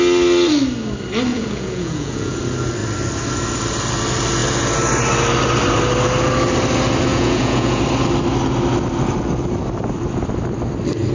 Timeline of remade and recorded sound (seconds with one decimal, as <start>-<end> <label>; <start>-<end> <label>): 0.0-1.3 recorded; 1.3-2.4 remade; 2.4-7.1 recorded; 7.1-7.8 remade; 7.8-11.1 recorded